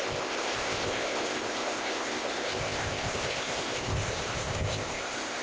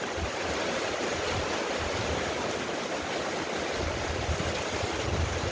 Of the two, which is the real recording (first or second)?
second